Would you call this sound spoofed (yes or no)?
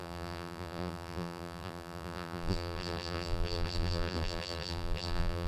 yes